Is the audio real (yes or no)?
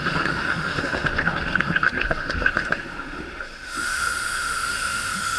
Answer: no